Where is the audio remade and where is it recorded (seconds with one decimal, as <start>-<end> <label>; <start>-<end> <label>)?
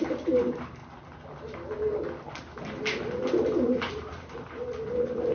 0.0-0.8 remade; 0.8-3.9 recorded; 3.9-4.6 remade; 4.6-5.3 recorded